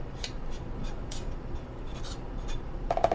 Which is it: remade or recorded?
remade